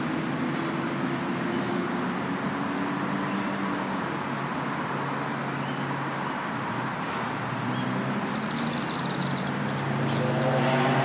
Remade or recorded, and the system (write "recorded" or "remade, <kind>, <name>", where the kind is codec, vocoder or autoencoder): recorded